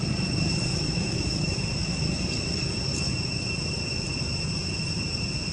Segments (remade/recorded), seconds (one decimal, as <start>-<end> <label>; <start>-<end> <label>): 0.0-0.7 recorded; 0.7-1.5 remade; 1.5-5.5 recorded

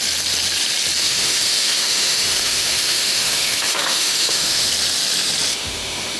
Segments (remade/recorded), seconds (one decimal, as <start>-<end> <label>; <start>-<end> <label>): 0.0-1.0 recorded; 1.0-4.7 remade; 4.7-5.5 recorded; 5.5-6.2 remade

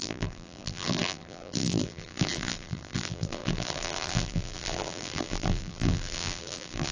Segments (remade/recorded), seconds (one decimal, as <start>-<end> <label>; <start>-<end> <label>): 0.0-6.9 remade

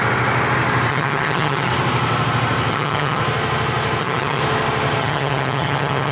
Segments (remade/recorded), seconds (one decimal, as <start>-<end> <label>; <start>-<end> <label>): 0.0-0.9 recorded; 0.9-1.7 remade; 1.7-2.7 recorded; 2.7-3.2 remade; 3.2-4.0 recorded; 4.0-4.4 remade; 4.4-5.0 recorded; 5.0-6.1 remade

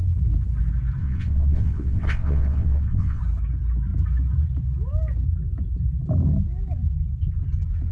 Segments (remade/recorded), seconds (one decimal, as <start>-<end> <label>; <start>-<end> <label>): 0.0-1.0 recorded; 1.0-3.2 remade; 3.2-7.9 recorded